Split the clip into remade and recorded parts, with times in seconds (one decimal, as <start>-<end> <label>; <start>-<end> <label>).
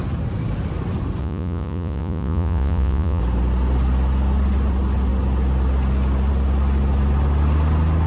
0.0-1.2 recorded; 1.2-3.2 remade; 3.2-8.1 recorded